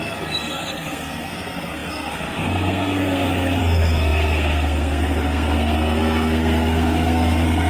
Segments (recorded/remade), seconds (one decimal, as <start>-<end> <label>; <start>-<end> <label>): 0.0-7.7 remade